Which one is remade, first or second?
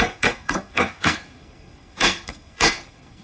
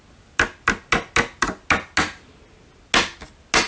first